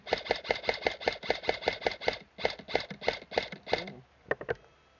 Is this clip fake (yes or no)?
no